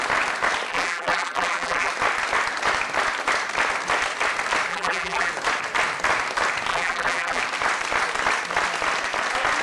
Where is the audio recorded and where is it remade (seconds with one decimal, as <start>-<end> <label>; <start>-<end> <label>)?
0.0-0.7 recorded; 0.7-1.9 remade; 1.9-4.7 recorded; 4.7-5.3 remade; 5.3-6.7 recorded; 6.7-7.4 remade; 7.4-9.6 recorded